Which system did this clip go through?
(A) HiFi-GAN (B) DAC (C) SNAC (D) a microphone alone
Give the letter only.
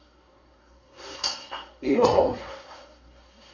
C